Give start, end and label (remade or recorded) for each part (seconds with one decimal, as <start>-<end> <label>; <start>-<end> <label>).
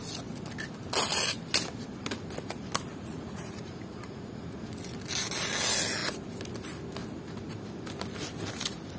0.0-2.9 recorded; 2.9-4.6 remade; 4.6-9.0 recorded